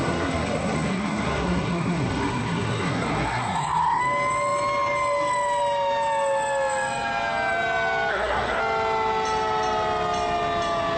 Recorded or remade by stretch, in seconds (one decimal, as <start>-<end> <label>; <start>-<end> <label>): 0.0-4.0 remade; 4.0-8.1 recorded; 8.1-8.6 remade; 8.6-11.0 recorded